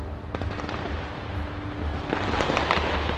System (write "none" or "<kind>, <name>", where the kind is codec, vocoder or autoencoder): none